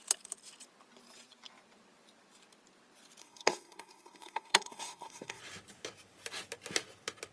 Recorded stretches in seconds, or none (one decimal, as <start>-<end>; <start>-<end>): 0.0-3.2; 5.4-7.3